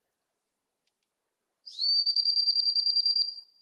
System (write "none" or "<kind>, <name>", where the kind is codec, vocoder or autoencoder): vocoder, BigVGAN v2